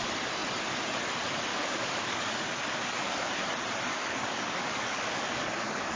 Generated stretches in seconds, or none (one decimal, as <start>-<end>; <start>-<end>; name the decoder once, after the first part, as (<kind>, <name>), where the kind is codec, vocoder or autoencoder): 1.5-3.3 (codec, DAC); 3.9-6.0